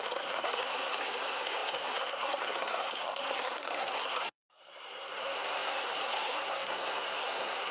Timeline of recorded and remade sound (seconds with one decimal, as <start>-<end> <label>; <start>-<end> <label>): 0.0-7.7 remade